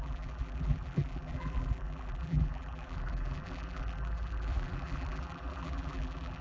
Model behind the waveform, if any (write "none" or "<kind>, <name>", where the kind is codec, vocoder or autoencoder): vocoder, BigVGAN v2